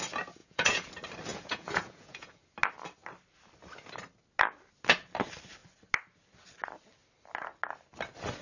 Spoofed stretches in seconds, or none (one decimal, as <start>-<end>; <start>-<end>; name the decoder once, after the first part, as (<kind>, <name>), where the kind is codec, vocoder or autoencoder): 0.4-0.9 (vocoder, Vocos); 1.3-2.4